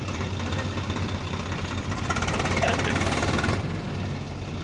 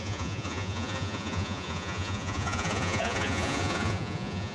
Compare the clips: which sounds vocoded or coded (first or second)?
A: second